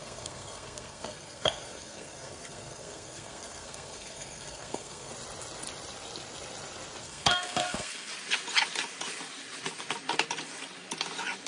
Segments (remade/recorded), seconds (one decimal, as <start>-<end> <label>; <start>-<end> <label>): 0.0-5.1 remade; 5.1-7.0 recorded; 7.0-8.1 remade; 8.1-11.5 recorded